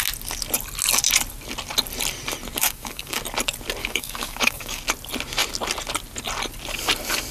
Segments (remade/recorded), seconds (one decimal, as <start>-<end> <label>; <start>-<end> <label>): 0.0-2.6 recorded; 2.6-3.2 remade; 3.2-3.8 recorded; 3.8-4.8 remade; 4.8-7.3 recorded